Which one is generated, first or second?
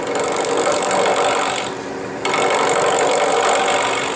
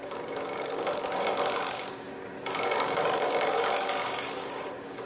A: second